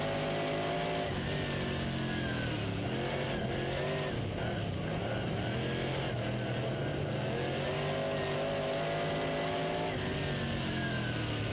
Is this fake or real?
real